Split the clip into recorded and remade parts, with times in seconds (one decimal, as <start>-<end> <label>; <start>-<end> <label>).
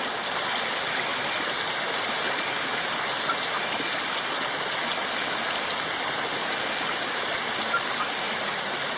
0.0-9.0 recorded